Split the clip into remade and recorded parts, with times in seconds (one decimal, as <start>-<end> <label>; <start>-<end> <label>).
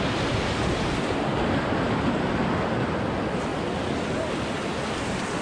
0.0-5.4 recorded